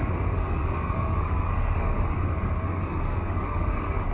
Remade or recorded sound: remade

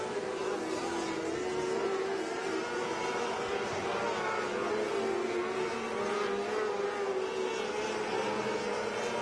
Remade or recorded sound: recorded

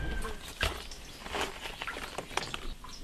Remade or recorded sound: recorded